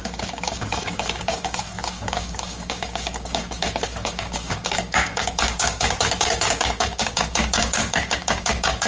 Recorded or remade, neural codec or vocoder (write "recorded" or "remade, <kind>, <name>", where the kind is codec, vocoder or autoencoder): remade, codec, DAC